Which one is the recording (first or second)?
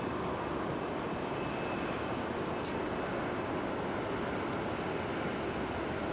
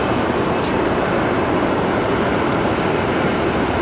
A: first